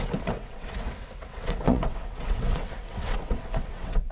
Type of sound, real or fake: fake